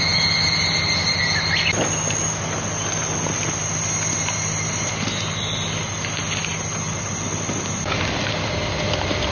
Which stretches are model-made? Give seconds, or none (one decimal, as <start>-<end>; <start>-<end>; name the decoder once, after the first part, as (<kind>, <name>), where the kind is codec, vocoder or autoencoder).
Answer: none